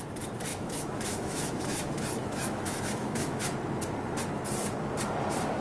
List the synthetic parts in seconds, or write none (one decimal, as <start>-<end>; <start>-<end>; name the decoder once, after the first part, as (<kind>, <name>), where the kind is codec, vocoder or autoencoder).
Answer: 0.5-3.4 (autoencoder, DAC-VAE)